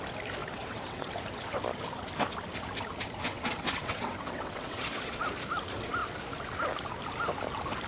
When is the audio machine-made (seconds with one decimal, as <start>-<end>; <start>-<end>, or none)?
0.4-1.1; 3.2-5.2